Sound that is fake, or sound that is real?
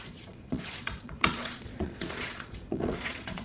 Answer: fake